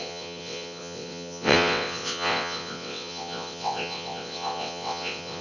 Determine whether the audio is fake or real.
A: fake